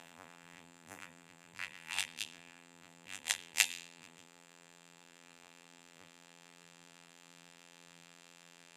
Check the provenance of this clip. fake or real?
fake